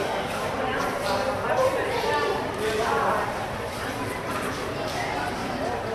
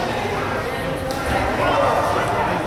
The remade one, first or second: first